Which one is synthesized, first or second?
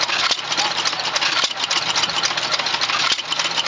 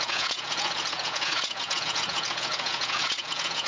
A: second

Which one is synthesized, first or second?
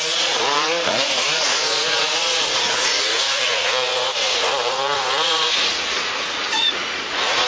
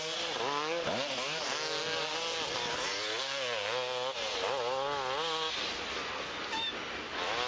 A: first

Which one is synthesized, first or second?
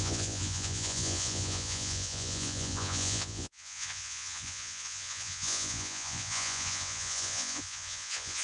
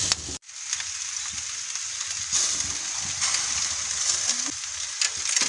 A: first